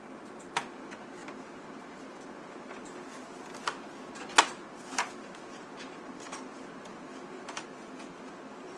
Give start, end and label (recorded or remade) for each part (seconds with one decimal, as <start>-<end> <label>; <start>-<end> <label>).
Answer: 0.0-8.8 recorded